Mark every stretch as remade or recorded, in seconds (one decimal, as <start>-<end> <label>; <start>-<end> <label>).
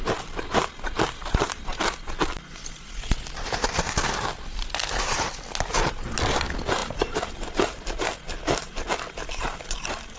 0.0-10.2 recorded